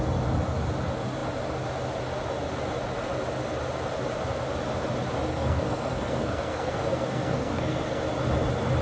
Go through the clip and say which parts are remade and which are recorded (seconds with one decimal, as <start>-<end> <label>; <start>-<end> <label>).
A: 0.0-5.3 recorded; 5.3-8.0 remade; 8.0-8.8 recorded